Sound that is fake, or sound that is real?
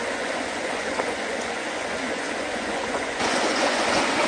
fake